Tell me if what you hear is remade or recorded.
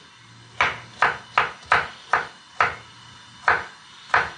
recorded